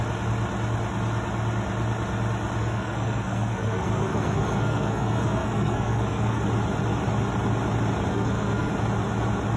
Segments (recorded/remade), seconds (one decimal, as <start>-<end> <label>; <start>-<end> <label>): 0.0-2.6 recorded; 2.6-6.4 remade; 6.4-8.1 recorded; 8.1-8.7 remade; 8.7-9.6 recorded